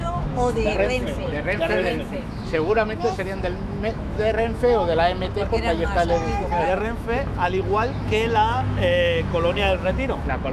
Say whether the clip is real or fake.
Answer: fake